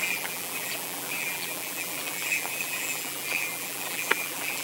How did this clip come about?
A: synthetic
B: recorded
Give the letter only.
A